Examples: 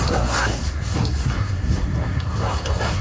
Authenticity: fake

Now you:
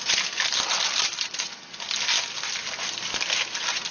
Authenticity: real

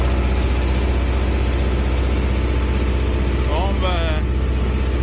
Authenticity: real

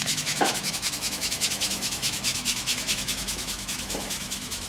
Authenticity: fake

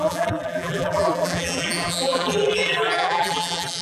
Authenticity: fake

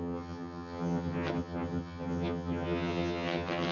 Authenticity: fake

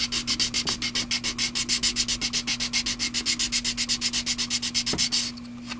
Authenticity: real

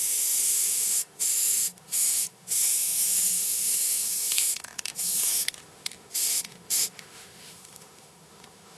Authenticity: fake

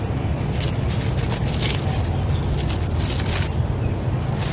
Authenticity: real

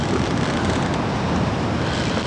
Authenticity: real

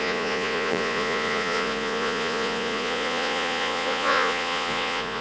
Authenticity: fake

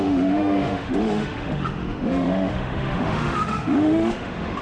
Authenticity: fake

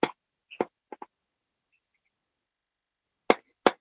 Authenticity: real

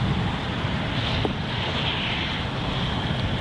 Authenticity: real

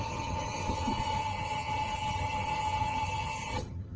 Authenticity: fake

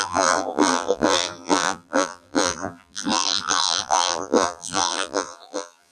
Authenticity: fake